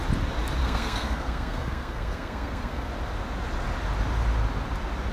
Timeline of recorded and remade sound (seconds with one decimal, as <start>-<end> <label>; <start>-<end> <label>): 0.0-0.6 recorded; 0.6-2.9 remade; 2.9-5.1 recorded